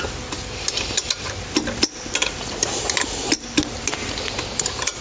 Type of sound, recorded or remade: recorded